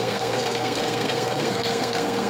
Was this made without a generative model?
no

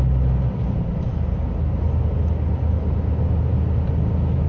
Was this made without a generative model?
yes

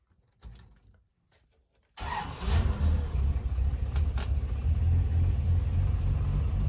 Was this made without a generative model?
yes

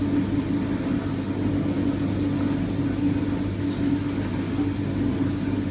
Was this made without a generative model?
yes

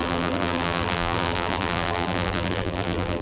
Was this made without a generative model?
no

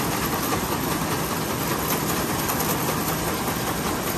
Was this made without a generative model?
yes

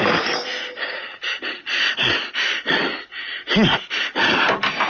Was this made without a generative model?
yes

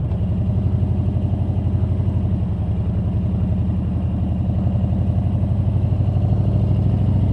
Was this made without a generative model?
yes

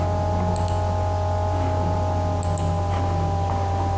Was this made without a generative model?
yes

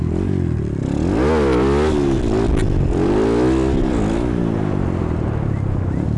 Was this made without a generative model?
yes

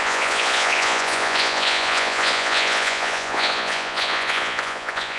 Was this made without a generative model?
no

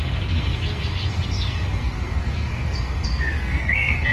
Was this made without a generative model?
no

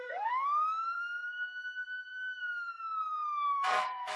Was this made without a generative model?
no